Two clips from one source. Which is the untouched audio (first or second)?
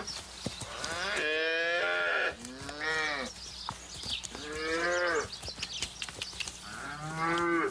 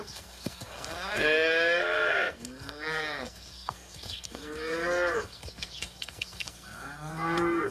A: first